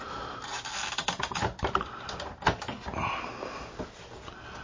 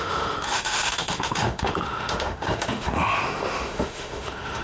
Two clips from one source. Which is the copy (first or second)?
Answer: second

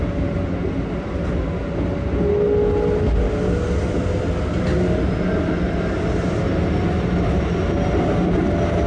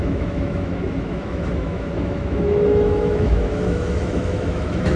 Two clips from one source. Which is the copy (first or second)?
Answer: second